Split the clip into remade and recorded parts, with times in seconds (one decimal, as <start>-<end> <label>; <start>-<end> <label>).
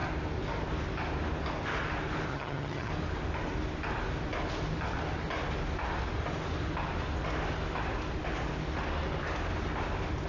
0.0-2.3 recorded; 2.3-2.9 remade; 2.9-10.3 recorded